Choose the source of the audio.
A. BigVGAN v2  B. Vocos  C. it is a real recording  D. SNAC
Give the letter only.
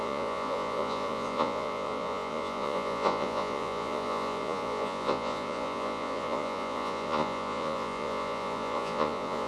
B